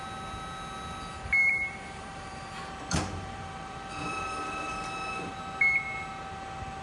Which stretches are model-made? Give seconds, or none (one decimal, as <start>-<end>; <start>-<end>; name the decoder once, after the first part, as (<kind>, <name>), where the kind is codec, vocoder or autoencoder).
1.4-4.7 (vocoder, BigVGAN v2)